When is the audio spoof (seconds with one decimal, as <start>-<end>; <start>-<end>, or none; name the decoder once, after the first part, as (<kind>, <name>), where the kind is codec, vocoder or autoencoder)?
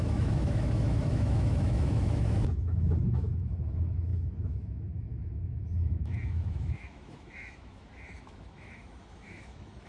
0.0-9.9 (autoencoder, DAC-VAE)